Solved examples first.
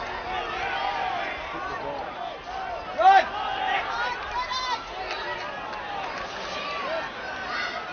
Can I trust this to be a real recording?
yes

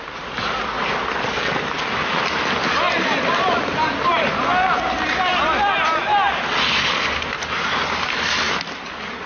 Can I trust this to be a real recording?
yes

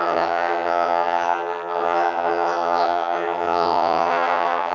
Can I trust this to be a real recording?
no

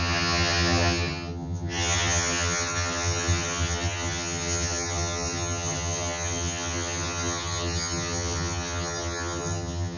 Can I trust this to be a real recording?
no